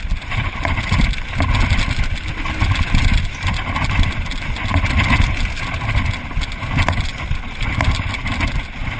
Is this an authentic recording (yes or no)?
yes